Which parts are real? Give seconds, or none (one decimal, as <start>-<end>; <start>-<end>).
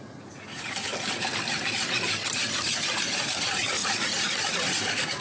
0.9-2.6